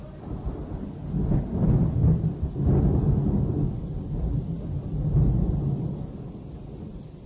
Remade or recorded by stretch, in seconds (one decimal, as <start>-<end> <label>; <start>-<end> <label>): 0.0-7.3 recorded